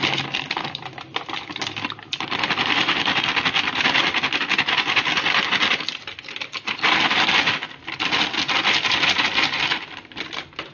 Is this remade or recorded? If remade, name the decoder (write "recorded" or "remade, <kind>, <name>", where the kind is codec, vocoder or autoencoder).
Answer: recorded